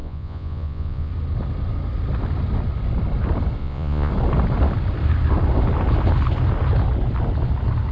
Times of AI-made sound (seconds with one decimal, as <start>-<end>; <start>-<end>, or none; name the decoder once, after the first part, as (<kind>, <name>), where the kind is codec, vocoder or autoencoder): 0.0-1.1 (vocoder, Vocos); 3.6-4.1